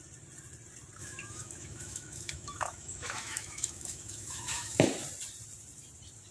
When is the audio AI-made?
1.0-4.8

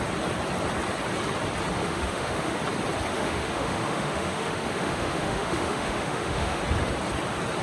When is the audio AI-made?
1.8-2.6; 3.1-6.6